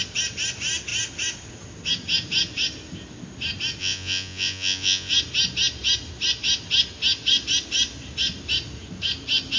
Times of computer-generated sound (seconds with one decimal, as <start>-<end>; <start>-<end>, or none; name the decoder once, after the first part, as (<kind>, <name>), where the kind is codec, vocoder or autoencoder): 3.8-5.1 (vocoder, Vocos)